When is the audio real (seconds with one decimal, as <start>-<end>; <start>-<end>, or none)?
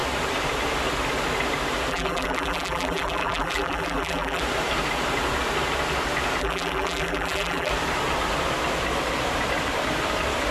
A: 0.0-1.9; 4.4-6.4; 7.7-10.5